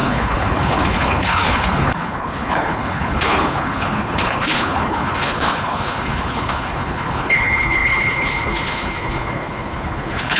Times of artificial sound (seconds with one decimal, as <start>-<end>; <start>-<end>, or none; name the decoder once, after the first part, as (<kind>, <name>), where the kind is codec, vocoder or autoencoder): 0.0-10.4 (codec, HILCodec)